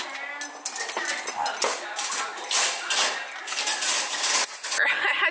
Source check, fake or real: real